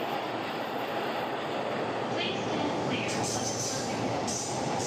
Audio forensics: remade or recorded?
remade